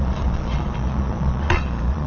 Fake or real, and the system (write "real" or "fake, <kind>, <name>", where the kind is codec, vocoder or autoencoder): fake, vocoder, Vocos